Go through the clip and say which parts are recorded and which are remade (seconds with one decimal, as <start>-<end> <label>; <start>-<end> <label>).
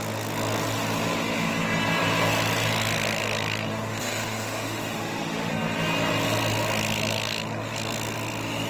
0.0-3.7 recorded; 3.7-5.5 remade; 5.5-8.7 recorded